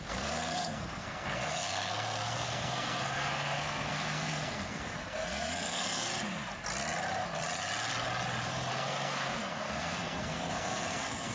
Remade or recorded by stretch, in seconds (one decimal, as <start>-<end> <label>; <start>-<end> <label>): 0.0-6.1 remade; 6.1-8.7 recorded; 8.7-11.3 remade